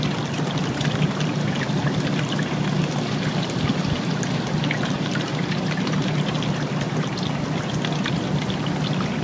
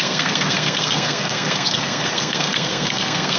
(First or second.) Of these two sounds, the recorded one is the first